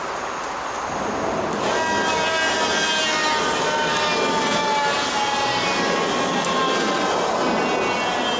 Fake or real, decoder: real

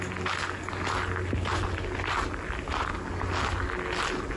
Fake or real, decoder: real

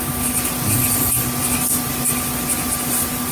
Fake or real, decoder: real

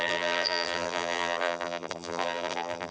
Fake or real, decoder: fake, vocoder, BigVGAN v2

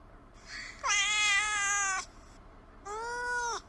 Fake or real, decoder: real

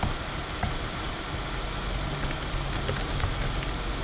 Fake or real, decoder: real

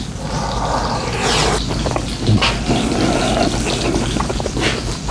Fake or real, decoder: real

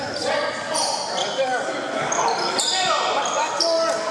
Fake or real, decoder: fake, vocoder, BigVGAN v2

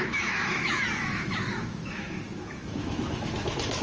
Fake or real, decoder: fake, autoencoder, DAC-VAE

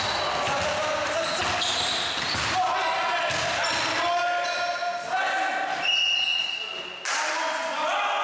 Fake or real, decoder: real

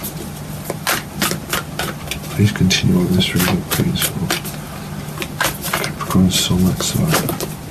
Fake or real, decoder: real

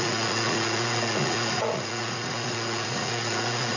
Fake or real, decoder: fake, vocoder, Vocos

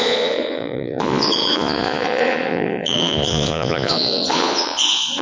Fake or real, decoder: fake, vocoder, Vocos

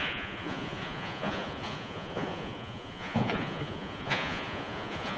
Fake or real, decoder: fake, vocoder, Vocos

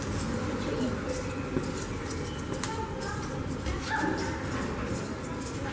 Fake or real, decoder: real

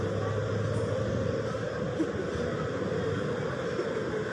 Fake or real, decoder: real